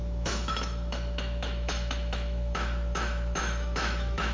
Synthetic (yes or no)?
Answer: yes